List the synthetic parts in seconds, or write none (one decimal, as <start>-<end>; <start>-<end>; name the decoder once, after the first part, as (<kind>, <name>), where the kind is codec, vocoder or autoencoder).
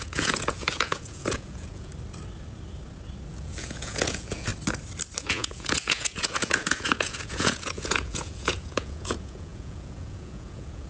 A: 0.0-1.9 (vocoder, Vocos); 3.3-4.5; 5.2-10.9